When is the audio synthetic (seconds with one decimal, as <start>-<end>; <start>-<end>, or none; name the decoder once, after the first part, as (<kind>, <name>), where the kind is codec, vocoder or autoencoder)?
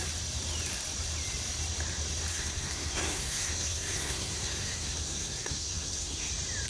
2.3-6.3 (codec, SNAC)